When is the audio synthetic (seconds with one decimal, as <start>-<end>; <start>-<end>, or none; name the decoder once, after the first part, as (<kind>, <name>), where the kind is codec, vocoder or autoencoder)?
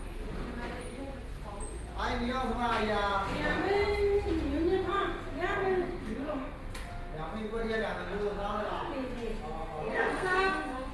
9.9-10.9 (codec, SNAC)